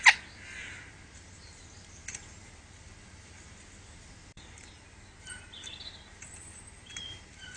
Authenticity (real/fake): real